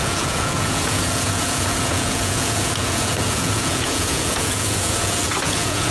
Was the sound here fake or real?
fake